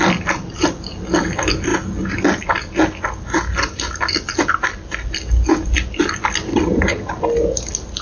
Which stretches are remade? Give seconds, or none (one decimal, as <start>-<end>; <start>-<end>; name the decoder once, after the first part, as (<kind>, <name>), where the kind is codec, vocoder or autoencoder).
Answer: 6.5-7.1 (vocoder, HiFi-GAN)